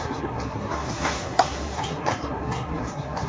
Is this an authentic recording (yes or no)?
no